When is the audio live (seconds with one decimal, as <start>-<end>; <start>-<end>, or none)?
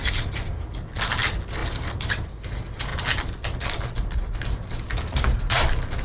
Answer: 0.5-1.6; 2.1-6.0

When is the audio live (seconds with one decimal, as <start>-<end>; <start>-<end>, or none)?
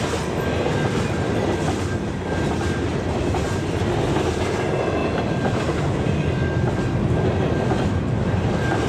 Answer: 0.0-2.9; 3.8-5.0; 5.8-8.9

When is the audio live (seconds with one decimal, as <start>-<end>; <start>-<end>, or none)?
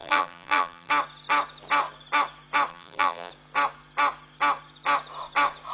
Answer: 0.9-2.7; 3.3-5.7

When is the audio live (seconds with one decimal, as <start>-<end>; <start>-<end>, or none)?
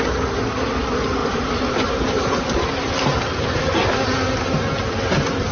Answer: 0.0-1.2; 2.3-3.3; 3.9-5.5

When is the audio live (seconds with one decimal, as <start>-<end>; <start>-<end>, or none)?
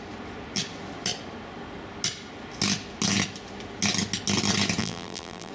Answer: 0.0-4.8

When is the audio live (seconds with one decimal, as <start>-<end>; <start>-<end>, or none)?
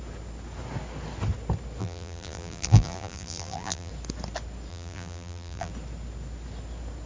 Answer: 0.0-1.8; 3.9-4.7; 5.7-7.1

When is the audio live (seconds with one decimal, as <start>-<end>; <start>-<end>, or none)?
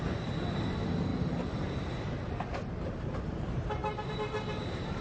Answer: 0.0-1.1; 4.1-5.0